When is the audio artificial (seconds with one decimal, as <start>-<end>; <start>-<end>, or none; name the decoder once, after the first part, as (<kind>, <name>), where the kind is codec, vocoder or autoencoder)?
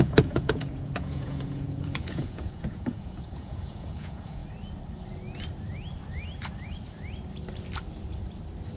0.0-4.4 (vocoder, Vocos)